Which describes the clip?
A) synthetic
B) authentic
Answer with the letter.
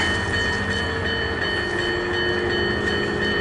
B